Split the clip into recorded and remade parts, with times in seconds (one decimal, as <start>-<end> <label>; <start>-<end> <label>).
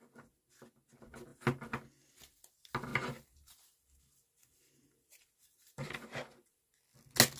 0.0-2.9 recorded; 2.9-6.7 remade; 6.7-7.4 recorded